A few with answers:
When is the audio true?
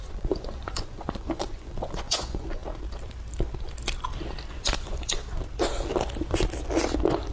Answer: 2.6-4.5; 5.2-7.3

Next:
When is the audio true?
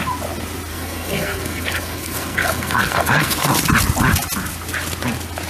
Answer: 0.0-0.7; 3.5-5.5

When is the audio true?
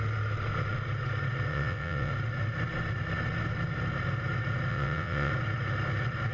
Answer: 0.0-1.5; 2.1-4.7; 5.3-6.3